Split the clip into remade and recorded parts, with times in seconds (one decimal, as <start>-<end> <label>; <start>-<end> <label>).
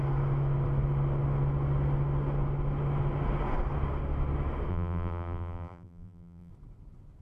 0.0-4.7 recorded; 4.7-6.5 remade; 6.5-7.2 recorded